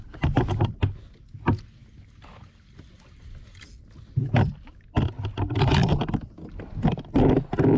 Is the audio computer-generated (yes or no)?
no